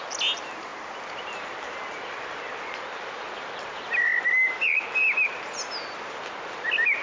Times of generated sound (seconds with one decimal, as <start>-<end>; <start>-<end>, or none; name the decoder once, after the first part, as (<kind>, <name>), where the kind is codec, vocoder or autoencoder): none